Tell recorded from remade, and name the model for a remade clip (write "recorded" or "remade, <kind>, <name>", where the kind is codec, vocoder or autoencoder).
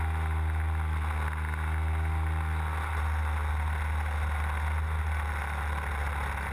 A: recorded